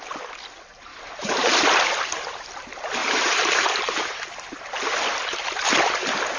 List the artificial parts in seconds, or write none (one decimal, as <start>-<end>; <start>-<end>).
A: 0.9-1.5; 3.0-4.2